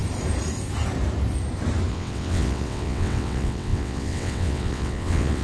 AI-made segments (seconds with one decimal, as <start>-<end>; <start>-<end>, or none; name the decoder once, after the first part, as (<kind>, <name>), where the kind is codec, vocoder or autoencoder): 1.9-5.4 (vocoder, WaveNeXt)